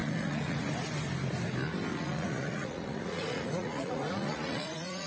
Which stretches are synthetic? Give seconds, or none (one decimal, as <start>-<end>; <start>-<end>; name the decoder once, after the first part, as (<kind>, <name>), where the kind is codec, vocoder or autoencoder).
0.0-0.6 (vocoder, Vocos); 1.9-5.1